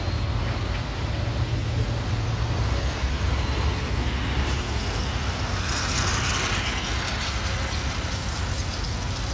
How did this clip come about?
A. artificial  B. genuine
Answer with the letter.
B